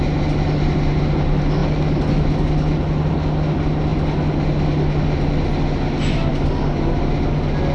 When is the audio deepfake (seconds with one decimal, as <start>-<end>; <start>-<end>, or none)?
none